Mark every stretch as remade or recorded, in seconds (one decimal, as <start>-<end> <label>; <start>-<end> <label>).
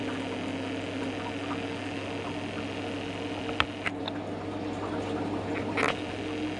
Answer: 0.0-6.6 recorded